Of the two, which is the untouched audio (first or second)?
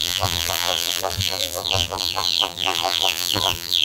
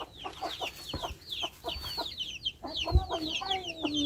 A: second